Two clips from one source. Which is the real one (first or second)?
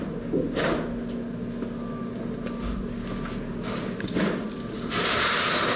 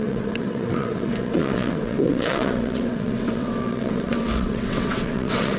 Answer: first